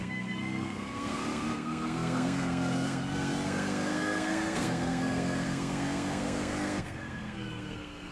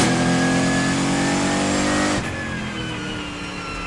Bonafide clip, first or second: second